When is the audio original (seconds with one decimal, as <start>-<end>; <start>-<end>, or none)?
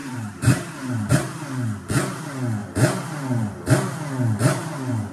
1.1-2.6; 3.7-4.4